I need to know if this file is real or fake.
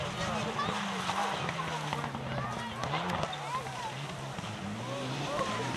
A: real